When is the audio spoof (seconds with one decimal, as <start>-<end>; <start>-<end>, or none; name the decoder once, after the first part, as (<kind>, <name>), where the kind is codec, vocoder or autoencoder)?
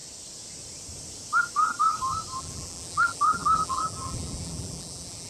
2.4-5.3 (vocoder, BigVGAN v2)